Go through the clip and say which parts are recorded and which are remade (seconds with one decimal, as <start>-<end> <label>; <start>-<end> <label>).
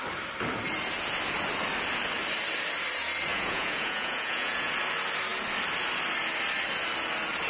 0.0-3.3 recorded; 3.3-4.7 remade; 4.7-7.5 recorded